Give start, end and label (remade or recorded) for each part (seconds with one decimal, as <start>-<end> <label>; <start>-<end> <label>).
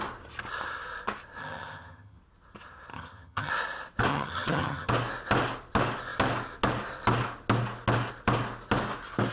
0.0-1.4 recorded; 1.4-2.2 remade; 2.2-2.9 recorded; 2.9-3.5 remade; 3.5-4.1 recorded; 4.1-4.9 remade; 4.9-9.3 recorded